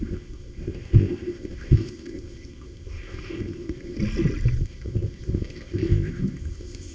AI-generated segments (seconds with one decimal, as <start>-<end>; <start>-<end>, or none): 0.0-4.0; 4.6-6.9